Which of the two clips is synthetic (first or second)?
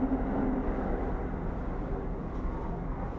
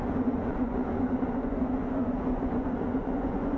second